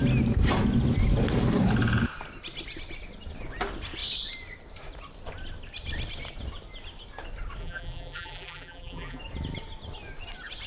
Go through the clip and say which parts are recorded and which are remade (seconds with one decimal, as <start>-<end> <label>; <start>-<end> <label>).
0.0-7.6 recorded; 7.6-9.2 remade; 9.2-10.7 recorded